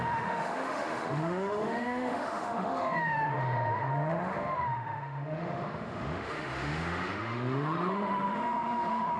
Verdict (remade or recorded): remade